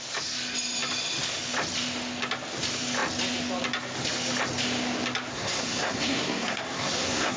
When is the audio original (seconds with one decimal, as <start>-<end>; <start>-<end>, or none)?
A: 0.0-5.3